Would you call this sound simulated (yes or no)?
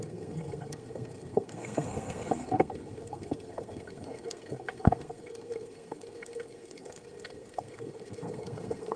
yes